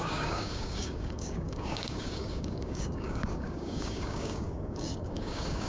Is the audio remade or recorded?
remade